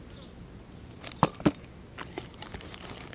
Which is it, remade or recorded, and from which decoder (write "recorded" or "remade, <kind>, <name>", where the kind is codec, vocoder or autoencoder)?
recorded